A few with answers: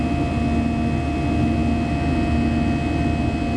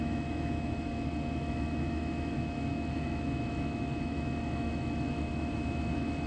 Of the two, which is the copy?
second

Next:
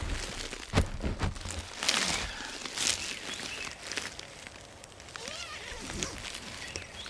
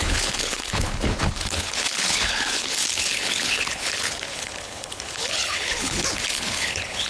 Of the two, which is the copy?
second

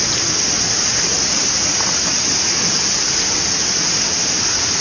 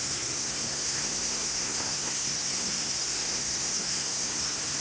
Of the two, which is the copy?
second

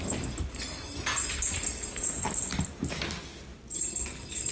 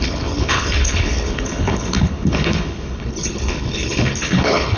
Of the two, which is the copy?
second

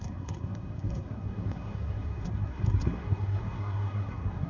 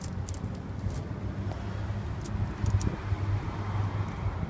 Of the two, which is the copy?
first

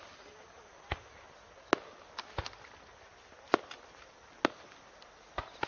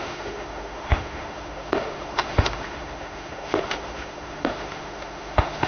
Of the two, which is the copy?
second